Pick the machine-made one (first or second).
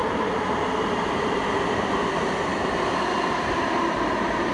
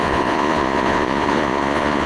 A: second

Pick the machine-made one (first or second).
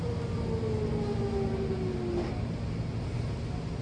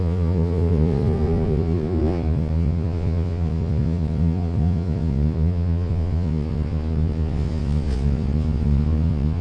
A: second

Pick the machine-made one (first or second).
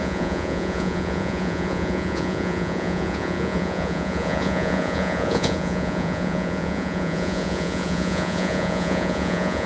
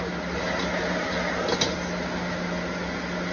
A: first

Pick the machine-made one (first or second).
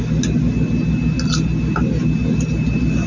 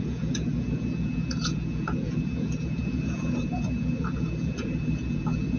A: second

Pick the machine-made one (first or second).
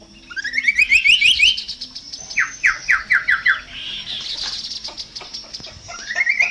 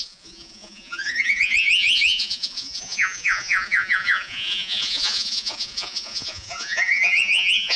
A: second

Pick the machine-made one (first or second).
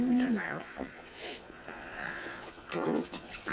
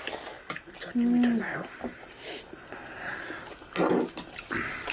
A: first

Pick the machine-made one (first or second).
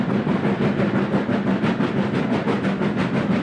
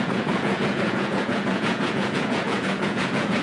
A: second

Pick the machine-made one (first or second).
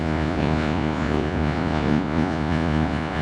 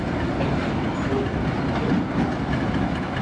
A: first